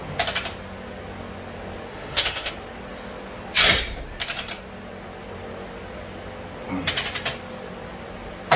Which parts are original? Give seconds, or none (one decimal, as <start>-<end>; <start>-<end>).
0.0-1.9; 2.5-8.6